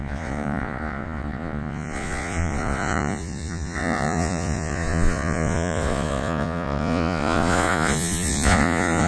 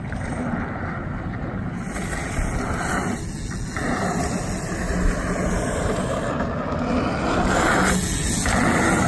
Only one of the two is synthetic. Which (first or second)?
first